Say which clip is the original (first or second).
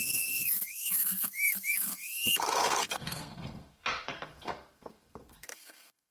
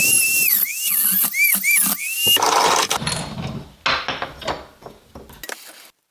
second